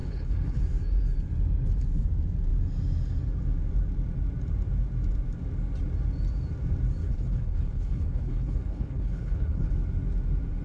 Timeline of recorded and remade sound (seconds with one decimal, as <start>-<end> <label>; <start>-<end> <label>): 0.0-0.6 remade; 0.6-7.0 recorded; 7.0-9.7 remade; 9.7-10.6 recorded